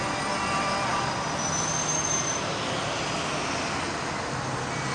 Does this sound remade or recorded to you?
recorded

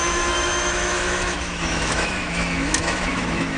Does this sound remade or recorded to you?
remade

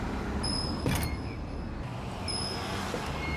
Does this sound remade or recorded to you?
recorded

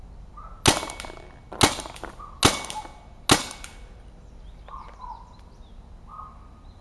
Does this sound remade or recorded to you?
recorded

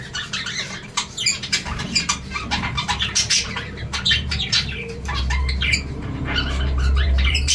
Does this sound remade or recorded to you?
remade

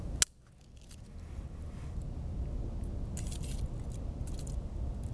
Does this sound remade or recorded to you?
recorded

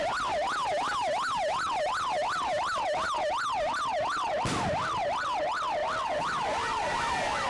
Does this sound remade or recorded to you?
recorded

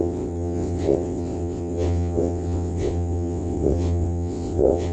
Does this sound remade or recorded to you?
remade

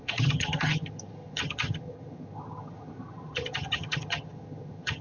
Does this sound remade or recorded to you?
remade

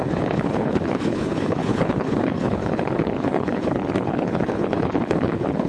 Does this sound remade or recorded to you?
remade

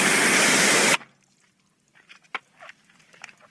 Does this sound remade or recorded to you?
recorded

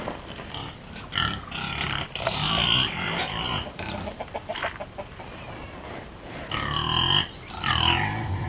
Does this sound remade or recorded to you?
recorded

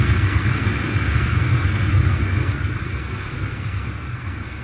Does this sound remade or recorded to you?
remade